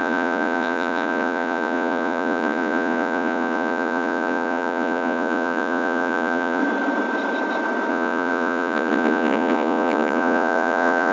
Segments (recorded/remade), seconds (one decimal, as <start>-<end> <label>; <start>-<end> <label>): 0.0-6.6 remade; 6.6-7.9 recorded; 7.9-11.1 remade